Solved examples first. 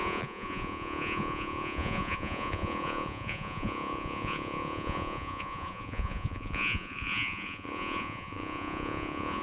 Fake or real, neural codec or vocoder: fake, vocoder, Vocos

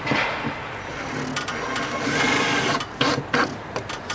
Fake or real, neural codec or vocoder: real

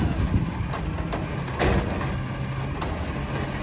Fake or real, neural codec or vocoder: real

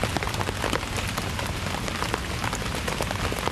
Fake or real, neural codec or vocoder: real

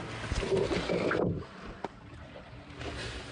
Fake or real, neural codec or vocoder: real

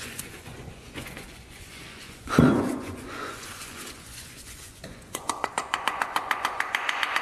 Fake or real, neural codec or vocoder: fake, vocoder, Vocos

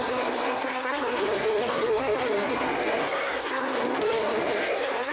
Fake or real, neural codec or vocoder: fake, codec, SNAC